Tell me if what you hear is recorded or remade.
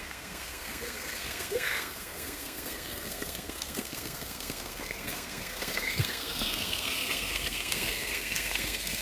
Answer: remade